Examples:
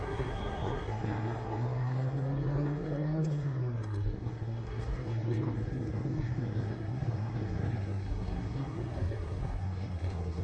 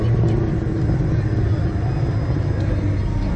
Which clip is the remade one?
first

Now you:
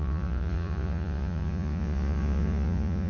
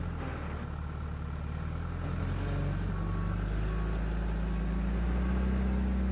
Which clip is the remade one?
first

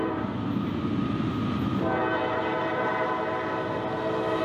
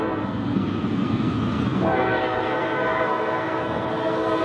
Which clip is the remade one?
second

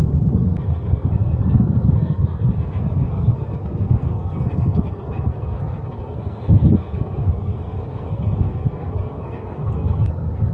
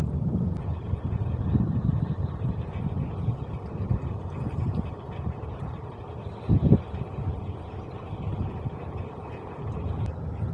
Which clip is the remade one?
first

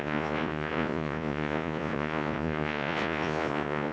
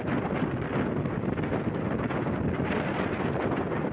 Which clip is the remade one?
first